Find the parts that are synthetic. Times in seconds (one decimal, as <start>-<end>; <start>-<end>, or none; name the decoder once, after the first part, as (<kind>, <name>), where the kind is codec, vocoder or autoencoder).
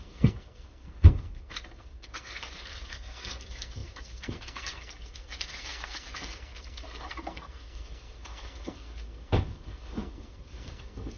0.0-11.2 (codec, SNAC)